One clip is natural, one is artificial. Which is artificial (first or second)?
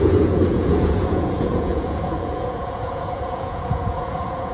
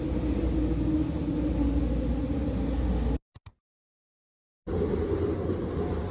first